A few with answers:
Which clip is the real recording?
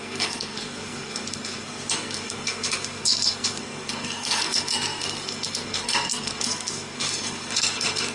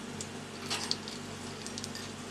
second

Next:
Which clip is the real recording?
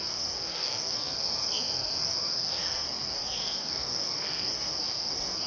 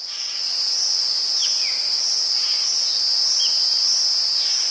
second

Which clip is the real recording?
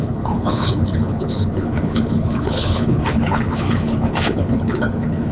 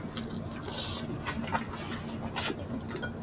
second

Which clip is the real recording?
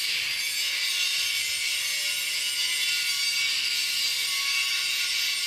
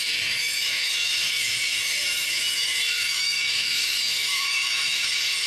first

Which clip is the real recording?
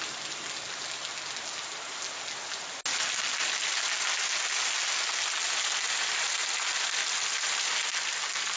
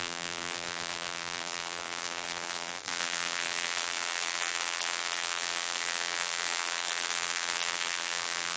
first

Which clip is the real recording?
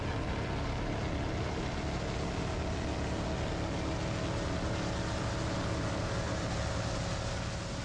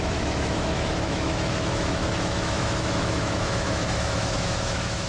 first